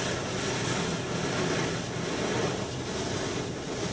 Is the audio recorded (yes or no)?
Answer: yes